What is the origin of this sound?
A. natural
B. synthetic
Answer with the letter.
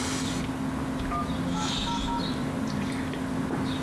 A